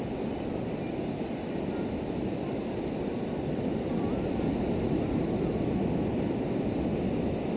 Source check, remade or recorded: recorded